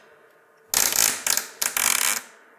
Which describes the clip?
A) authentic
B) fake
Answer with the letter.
A